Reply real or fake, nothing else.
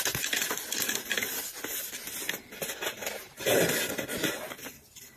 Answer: real